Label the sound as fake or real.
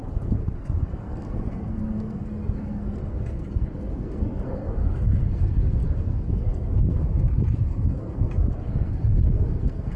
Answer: fake